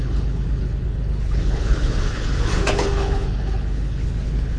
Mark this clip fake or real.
fake